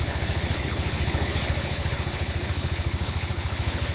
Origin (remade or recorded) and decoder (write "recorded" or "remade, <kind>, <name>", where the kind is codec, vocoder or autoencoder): remade, codec, HILCodec